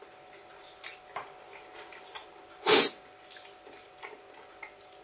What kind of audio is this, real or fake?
real